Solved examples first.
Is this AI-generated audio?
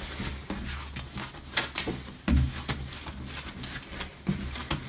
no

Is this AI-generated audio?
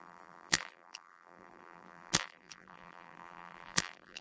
yes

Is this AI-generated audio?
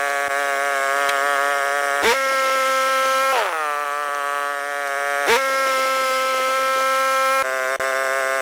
no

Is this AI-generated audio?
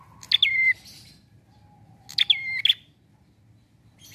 no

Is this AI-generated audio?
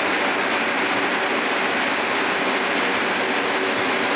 no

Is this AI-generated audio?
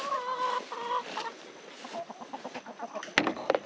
no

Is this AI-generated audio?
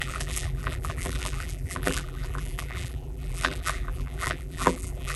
yes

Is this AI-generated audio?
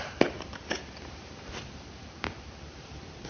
yes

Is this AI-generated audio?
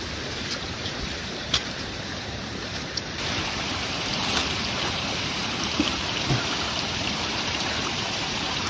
yes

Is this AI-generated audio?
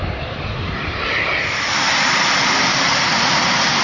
yes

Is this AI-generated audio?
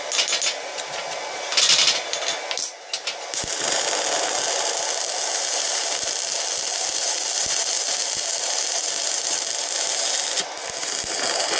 no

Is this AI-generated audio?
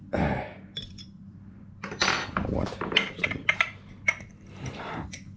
yes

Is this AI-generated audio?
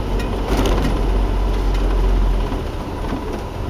no